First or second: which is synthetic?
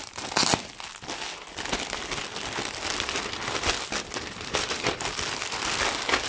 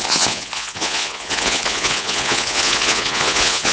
second